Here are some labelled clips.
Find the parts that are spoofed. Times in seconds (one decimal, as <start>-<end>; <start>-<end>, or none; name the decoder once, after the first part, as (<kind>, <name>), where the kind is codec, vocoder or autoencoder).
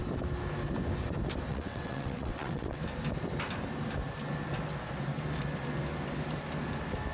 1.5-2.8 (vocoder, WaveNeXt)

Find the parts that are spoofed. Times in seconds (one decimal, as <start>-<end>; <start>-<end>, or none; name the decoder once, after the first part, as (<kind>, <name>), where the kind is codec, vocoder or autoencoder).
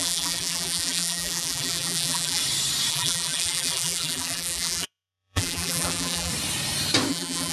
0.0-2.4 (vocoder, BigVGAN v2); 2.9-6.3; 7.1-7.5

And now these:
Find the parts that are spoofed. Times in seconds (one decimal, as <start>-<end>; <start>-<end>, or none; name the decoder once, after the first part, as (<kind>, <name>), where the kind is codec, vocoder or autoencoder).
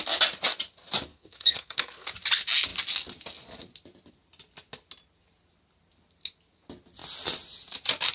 1.1-2.1 (codec, SNAC)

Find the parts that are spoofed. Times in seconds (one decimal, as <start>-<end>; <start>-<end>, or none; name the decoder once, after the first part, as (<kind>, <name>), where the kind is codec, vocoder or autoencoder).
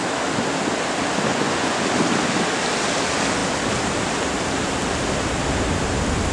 1.3-1.8 (vocoder, Vocos)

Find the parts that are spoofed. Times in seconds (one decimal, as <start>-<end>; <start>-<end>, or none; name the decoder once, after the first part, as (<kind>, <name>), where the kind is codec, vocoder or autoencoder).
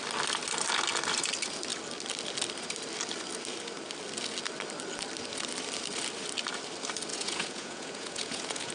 7.1-8.7 (vocoder, Vocos)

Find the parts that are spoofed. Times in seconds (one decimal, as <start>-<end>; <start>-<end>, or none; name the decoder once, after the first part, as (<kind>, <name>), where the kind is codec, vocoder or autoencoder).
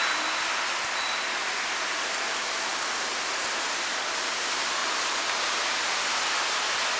none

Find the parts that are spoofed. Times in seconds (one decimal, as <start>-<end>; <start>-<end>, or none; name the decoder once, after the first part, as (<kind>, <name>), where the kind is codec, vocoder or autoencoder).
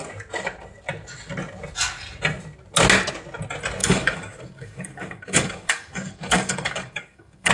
3.8-7.5 (codec, DAC)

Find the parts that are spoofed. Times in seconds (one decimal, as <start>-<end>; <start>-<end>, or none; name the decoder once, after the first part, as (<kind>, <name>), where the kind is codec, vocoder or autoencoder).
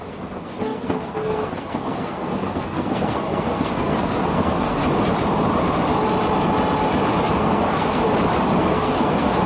0.0-4.8 (codec, SNAC); 7.3-8.0; 8.6-9.5